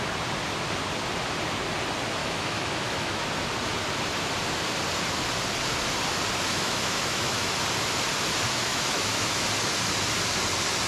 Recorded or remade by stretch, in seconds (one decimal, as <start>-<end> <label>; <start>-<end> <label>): 0.0-2.2 recorded; 2.2-3.2 remade; 3.2-6.5 recorded; 6.5-7.5 remade; 7.5-8.7 recorded; 8.7-9.5 remade; 9.5-10.9 recorded